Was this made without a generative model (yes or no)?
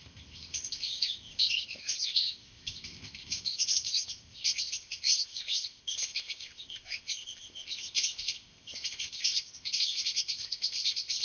no